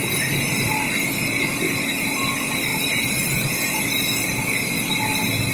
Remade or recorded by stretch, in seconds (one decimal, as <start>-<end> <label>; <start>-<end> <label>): 0.0-2.7 recorded; 2.7-3.8 remade; 3.8-5.5 recorded